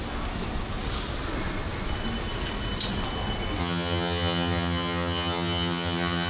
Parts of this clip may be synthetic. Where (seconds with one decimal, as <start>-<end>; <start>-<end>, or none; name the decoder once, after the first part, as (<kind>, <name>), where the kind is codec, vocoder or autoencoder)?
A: 3.6-6.3 (vocoder, HiFi-GAN)